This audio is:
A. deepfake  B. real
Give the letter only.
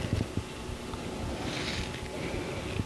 B